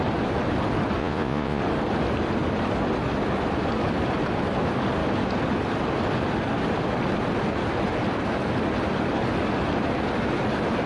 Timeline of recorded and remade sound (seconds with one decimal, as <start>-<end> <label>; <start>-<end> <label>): 0.0-1.0 recorded; 1.0-1.6 remade; 1.6-10.9 recorded